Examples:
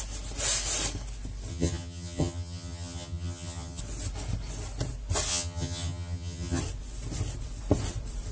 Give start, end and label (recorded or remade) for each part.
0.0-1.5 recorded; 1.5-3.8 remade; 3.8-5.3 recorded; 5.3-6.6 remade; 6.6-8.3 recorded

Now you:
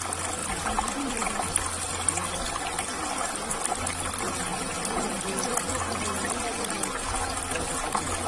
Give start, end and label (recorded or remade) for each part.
0.0-4.5 recorded; 4.5-5.0 remade; 5.0-8.3 recorded